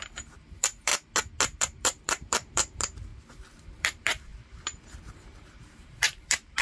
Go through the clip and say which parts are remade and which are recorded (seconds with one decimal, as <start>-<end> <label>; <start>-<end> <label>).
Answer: 0.0-0.9 remade; 0.9-1.6 recorded; 1.6-3.1 remade; 3.1-3.8 recorded; 3.8-6.6 remade